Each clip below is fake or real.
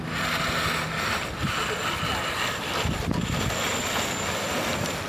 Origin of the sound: real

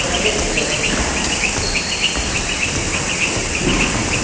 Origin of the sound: real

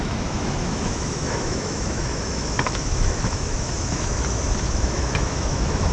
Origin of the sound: fake